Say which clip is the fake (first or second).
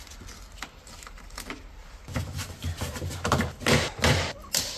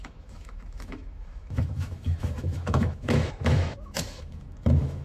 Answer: second